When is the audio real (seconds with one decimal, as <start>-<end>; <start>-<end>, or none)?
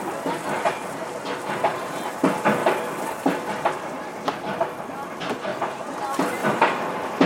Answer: 0.0-2.6; 4.6-7.3